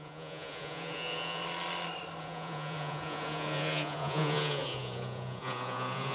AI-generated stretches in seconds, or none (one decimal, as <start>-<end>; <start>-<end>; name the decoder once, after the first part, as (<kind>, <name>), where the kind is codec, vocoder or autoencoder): 0.0-1.4 (vocoder, Vocos); 2.2-6.1